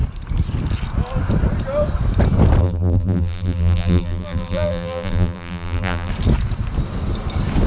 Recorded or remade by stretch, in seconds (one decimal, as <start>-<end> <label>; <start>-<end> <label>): 0.0-2.6 recorded; 2.6-6.1 remade; 6.1-7.7 recorded